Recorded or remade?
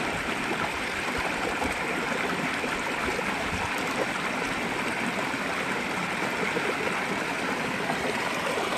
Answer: recorded